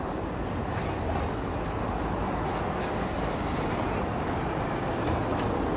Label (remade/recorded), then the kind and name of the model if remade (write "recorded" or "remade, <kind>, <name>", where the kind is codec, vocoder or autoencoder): recorded